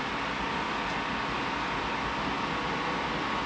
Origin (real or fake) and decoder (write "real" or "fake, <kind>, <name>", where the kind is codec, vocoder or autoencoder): real